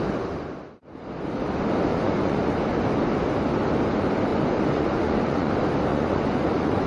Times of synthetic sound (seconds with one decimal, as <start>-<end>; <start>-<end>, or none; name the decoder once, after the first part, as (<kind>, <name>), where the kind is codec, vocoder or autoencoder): 1.9-2.5 (vocoder, Vocos); 4.3-5.5; 5.9-6.9